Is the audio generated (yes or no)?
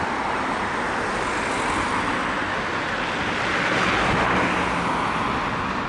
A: no